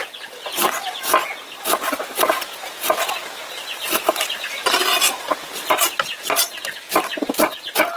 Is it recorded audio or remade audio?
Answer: recorded